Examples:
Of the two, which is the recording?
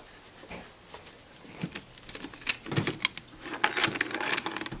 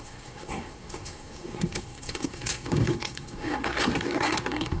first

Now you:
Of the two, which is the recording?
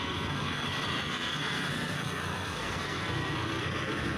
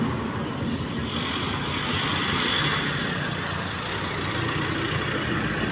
second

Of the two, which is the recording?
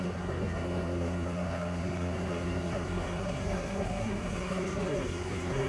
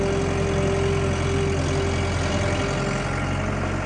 second